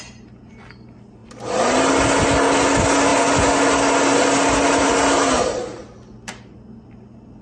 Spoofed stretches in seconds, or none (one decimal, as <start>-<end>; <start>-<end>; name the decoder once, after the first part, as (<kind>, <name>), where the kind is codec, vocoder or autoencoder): none